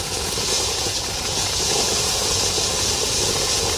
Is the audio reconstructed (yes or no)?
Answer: yes